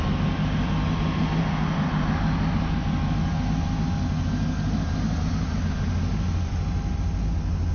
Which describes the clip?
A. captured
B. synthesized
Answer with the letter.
A